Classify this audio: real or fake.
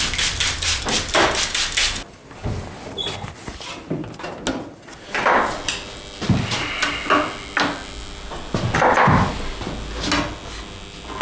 real